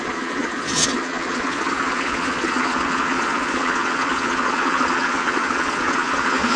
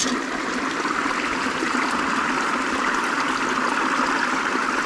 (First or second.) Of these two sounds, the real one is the second